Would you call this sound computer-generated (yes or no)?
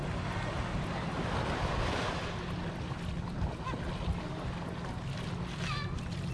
no